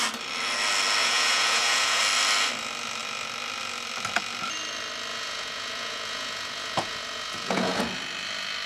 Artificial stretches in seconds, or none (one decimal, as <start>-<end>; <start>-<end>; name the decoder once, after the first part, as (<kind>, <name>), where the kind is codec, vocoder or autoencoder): 1.0-2.0 (vocoder, Vocos); 5.1-7.8